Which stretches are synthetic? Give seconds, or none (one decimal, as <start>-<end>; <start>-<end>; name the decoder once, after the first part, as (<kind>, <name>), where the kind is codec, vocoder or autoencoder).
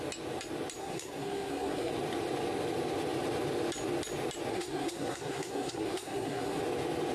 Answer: 0.8-1.9 (codec, SNAC); 4.5-6.6